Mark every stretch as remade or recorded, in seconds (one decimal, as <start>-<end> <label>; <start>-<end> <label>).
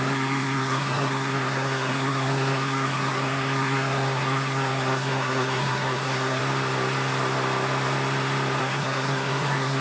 0.0-6.4 remade; 6.4-8.6 recorded; 8.6-9.8 remade